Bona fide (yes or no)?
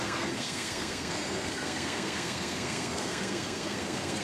no